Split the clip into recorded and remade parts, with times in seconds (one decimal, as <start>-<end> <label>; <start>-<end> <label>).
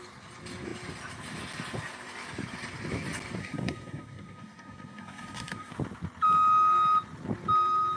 0.0-3.4 recorded; 3.4-5.7 remade; 5.7-8.0 recorded